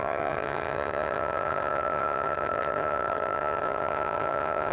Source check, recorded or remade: remade